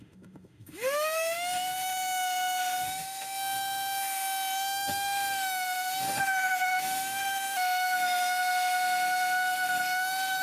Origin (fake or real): fake